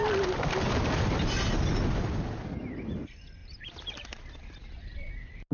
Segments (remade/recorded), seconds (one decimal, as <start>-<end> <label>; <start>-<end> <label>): 0.0-3.4 recorded; 3.4-4.3 remade; 4.3-5.5 recorded

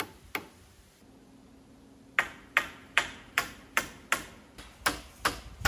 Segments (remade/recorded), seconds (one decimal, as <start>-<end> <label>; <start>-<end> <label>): 0.0-2.8 recorded; 2.8-3.8 remade; 3.8-5.7 recorded